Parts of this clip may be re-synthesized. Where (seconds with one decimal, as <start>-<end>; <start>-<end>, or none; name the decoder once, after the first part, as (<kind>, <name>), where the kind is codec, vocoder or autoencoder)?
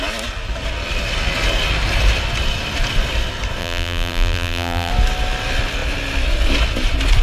3.6-4.9 (vocoder, BigVGAN v2)